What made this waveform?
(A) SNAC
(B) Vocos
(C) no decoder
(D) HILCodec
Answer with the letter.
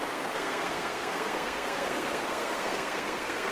A